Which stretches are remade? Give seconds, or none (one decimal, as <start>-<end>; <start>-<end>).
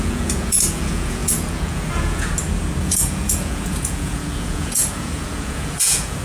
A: 0.0-2.3; 2.8-6.2